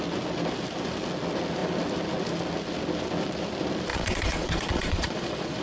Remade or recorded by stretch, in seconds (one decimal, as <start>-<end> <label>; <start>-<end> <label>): 0.0-3.9 recorded; 3.9-5.6 remade